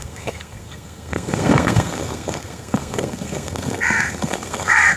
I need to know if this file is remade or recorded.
remade